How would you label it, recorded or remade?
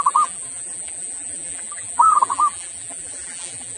remade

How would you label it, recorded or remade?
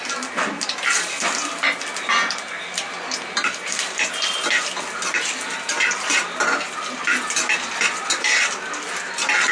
recorded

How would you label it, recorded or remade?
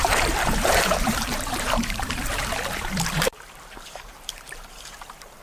remade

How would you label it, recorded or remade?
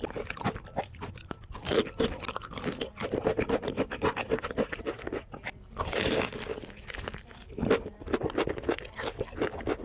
recorded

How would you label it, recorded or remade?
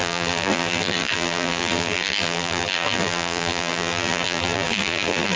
remade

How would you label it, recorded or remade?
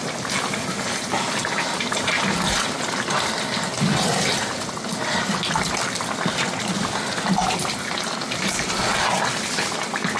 recorded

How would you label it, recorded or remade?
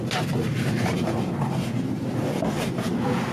recorded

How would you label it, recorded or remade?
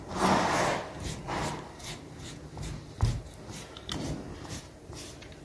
remade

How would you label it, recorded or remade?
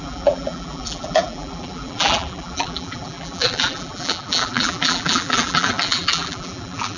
remade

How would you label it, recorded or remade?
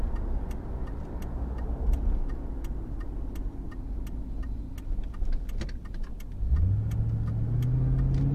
recorded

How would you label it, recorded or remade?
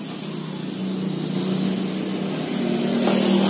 recorded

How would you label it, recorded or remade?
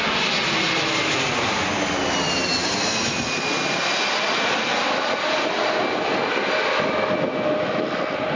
recorded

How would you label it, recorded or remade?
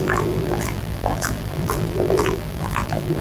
remade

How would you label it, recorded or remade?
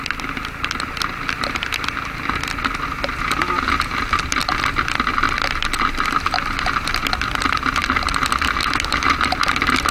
recorded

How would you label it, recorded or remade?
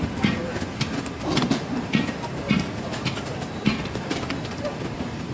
recorded